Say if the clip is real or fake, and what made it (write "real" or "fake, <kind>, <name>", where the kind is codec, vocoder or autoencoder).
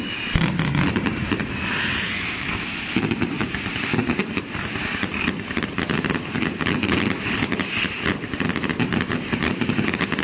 fake, vocoder, BigVGAN v2